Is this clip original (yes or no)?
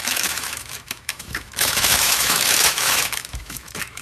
no